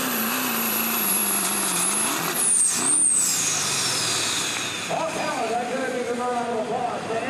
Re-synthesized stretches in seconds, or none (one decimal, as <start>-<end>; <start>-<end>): 0.0-1.2; 5.5-7.3